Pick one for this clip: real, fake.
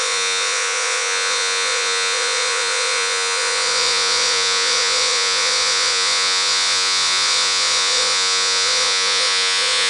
fake